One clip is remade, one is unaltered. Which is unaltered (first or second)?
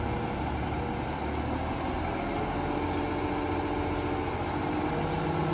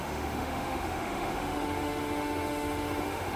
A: first